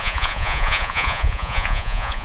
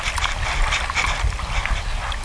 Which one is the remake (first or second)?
first